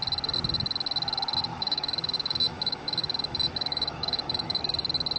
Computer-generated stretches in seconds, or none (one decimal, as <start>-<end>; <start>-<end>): 1.5-4.6